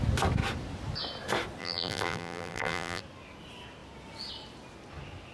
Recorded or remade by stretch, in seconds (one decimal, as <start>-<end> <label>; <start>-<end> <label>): 0.0-1.6 recorded; 1.6-3.0 remade; 3.0-5.3 recorded